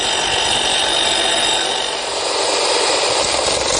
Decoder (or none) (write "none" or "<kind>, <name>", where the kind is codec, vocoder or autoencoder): none